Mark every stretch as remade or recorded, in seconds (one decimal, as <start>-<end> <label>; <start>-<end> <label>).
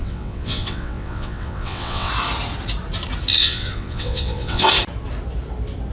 0.0-2.1 remade; 2.1-3.4 recorded; 3.4-4.7 remade; 4.7-5.9 recorded